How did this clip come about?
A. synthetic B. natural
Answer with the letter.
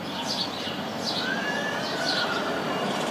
B